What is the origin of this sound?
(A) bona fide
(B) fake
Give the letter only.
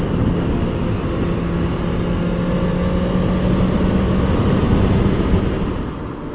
A